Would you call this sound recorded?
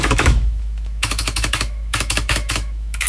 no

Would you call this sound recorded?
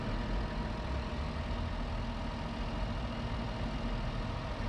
yes